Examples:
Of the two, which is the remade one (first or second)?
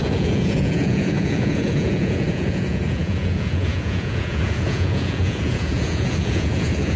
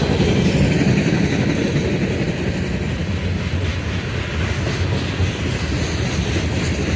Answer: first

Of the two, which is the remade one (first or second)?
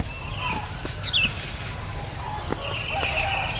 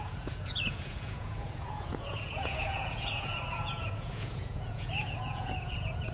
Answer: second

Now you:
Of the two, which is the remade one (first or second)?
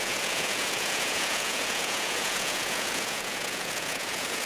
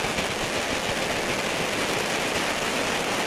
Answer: first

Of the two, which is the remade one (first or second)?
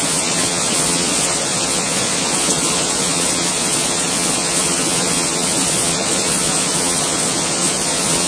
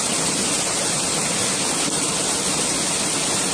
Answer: first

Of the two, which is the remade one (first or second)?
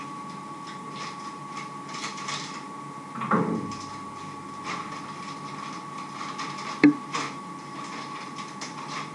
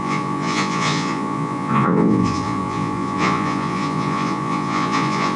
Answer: second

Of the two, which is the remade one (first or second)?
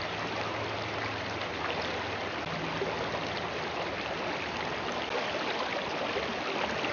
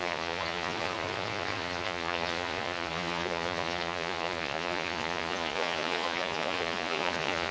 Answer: second